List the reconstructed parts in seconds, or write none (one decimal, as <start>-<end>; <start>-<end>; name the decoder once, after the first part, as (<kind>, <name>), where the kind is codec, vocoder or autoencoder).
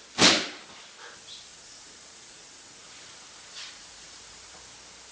1.5-4.6 (vocoder, Vocos)